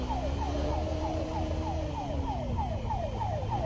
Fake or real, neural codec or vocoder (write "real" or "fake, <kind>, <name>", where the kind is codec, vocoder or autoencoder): fake, vocoder, BigVGAN v2